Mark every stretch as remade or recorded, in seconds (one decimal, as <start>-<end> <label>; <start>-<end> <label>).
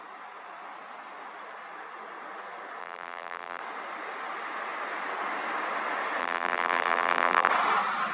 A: 0.0-2.8 recorded; 2.8-3.6 remade; 3.6-6.2 recorded; 6.2-7.5 remade; 7.5-8.1 recorded